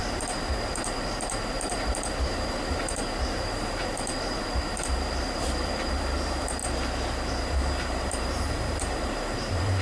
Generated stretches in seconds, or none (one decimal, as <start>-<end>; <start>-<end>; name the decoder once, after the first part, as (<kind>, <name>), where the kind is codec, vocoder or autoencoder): 0.0-6.6 (vocoder, BigVGAN v2); 7.4-9.8